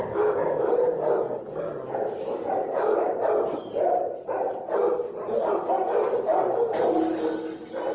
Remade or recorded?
recorded